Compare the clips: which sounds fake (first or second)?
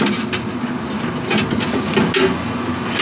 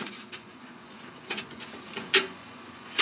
second